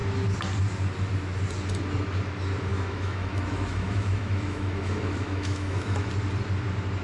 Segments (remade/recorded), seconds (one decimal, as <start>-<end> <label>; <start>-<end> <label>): 0.0-2.7 recorded; 2.7-6.1 remade; 6.1-7.0 recorded